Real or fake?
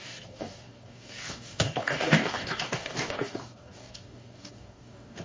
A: fake